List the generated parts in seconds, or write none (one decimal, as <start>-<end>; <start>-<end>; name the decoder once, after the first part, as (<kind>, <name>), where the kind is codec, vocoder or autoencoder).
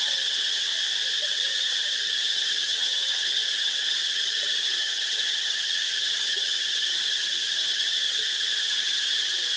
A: 0.0-0.7 (vocoder, HiFi-GAN); 1.2-9.6